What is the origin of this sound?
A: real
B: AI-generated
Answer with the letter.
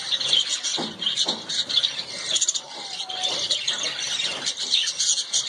A